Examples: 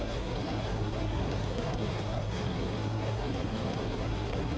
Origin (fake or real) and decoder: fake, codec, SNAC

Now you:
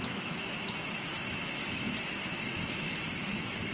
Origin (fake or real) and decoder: fake, autoencoder, DAC-VAE